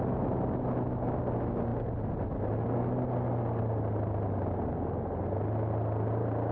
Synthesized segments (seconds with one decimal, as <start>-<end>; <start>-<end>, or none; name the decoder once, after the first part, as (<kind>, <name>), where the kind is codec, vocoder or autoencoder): none

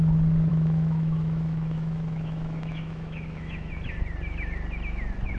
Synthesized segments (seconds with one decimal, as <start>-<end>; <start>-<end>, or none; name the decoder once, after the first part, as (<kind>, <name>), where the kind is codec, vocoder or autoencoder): 0.5-3.7 (autoencoder, DAC-VAE)

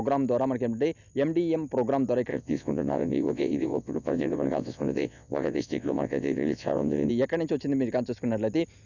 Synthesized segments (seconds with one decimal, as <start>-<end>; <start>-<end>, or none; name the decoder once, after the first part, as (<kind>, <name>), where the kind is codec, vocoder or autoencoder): 2.3-7.1 (vocoder, WaveNeXt)